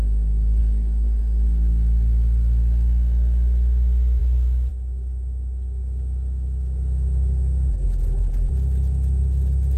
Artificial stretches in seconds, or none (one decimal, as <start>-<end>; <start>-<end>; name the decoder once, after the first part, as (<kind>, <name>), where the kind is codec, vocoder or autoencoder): 7.7-8.5 (vocoder, BigVGAN v2)